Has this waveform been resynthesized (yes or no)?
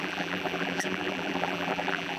yes